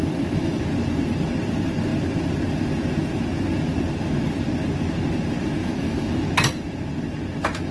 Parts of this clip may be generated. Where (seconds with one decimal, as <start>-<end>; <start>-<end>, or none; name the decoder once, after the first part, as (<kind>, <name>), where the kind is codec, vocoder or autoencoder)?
0.0-0.6 (autoencoder, DAC-VAE); 5.6-6.3